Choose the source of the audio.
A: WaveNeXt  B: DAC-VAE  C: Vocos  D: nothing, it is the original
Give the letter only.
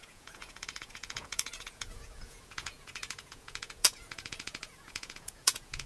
C